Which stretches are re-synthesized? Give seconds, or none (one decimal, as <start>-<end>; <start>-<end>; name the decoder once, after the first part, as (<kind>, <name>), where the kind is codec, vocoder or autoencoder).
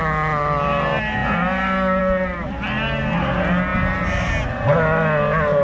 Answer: none